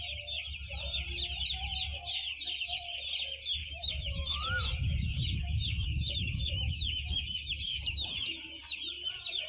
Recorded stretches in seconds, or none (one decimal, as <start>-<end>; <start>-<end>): 0.0-3.6; 8.6-9.5